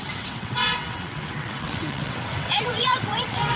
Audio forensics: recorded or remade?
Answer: remade